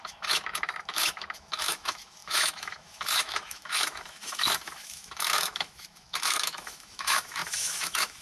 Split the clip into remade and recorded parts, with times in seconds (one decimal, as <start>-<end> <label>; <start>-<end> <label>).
0.0-8.2 remade